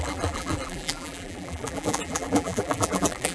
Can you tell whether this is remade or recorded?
remade